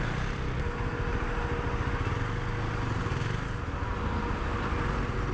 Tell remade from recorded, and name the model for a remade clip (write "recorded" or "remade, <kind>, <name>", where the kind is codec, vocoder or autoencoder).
recorded